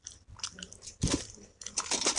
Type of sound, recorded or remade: recorded